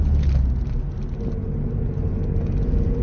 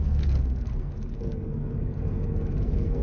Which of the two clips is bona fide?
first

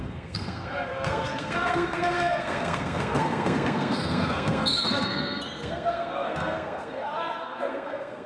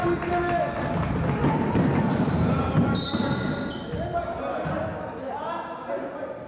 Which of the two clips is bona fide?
second